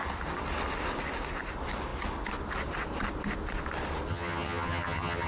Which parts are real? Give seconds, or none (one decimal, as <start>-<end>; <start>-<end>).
0.0-4.1